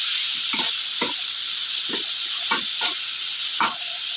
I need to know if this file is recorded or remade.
recorded